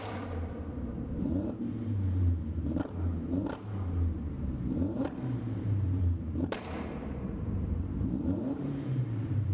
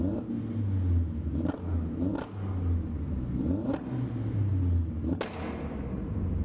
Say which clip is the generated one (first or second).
first